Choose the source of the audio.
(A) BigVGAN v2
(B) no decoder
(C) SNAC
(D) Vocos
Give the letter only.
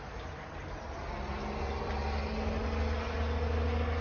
B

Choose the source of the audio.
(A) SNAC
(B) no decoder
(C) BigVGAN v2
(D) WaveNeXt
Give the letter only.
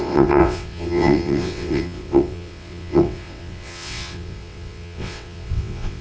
D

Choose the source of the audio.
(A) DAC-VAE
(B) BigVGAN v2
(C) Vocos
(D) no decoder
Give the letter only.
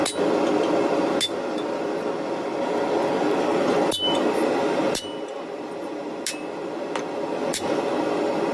D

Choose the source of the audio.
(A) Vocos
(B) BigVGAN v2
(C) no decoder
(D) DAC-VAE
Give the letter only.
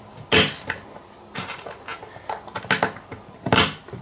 C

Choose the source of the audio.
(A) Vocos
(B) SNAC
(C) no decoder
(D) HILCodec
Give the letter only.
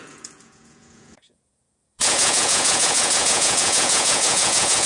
A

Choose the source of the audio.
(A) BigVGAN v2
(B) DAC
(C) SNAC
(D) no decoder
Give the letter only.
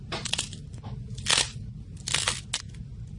D